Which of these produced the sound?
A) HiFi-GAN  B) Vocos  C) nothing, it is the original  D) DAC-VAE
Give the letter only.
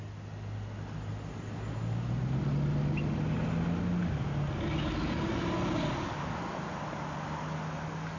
C